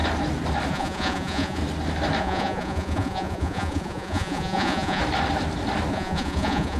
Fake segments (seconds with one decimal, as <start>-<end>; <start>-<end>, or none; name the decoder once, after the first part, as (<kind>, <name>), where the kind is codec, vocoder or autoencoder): 0.7-1.6 (vocoder, Vocos); 2.2-5.0; 5.9-6.8